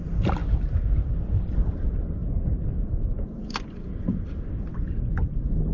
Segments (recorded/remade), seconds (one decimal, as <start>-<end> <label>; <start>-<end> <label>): 0.0-5.7 recorded